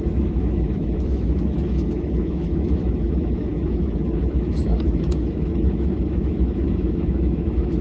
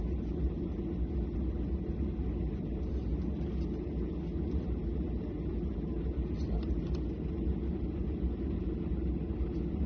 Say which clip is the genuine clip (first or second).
second